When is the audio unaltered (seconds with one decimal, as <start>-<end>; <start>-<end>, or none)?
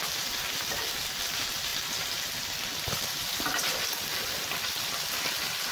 0.0-5.7